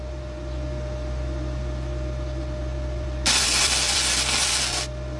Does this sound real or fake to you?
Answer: real